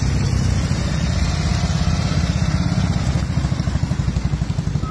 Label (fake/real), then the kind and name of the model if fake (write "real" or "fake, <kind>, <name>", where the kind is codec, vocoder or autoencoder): real